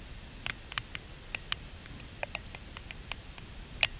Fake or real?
real